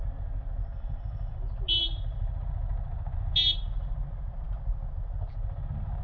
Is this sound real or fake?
real